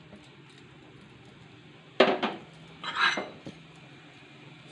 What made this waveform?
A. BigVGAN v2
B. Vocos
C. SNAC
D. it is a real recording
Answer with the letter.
A